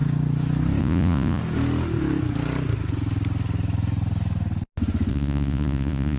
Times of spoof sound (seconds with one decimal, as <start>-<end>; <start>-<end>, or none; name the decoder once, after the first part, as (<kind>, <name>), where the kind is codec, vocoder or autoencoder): 0.8-1.4 (vocoder, Vocos); 5.1-6.2